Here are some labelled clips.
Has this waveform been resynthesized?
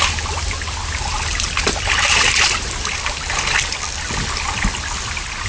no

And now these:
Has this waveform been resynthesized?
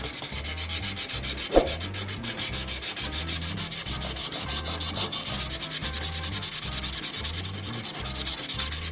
no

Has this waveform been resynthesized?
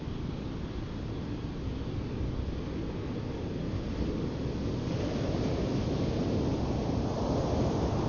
no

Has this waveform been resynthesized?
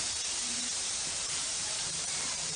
yes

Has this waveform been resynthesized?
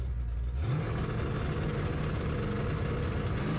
no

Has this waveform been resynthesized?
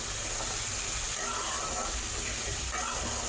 no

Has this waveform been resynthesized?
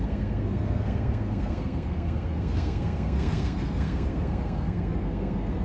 yes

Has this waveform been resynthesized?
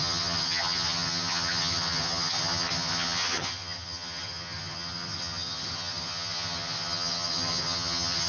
yes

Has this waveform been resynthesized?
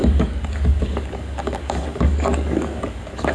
yes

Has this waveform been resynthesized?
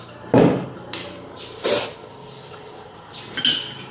no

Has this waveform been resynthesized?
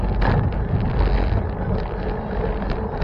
no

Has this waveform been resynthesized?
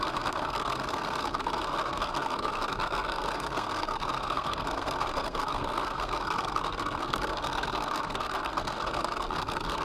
yes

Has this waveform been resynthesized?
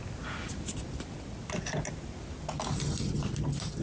no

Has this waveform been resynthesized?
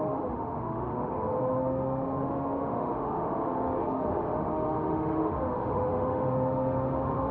yes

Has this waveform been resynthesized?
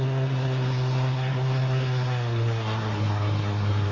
yes